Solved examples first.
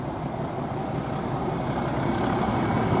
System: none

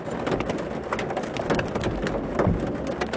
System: vocoder, BigVGAN v2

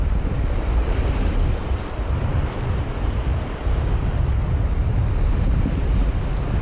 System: none